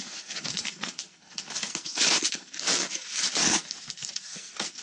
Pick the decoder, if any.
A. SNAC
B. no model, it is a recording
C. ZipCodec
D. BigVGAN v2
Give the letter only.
A